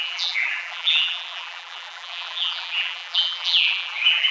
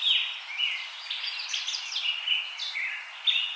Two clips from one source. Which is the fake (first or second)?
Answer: first